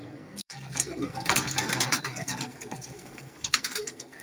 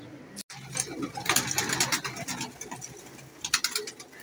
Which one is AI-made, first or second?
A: first